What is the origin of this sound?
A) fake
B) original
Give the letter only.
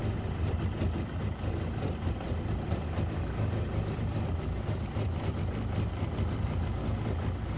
B